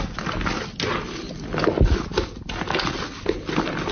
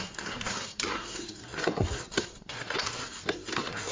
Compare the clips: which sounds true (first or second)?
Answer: first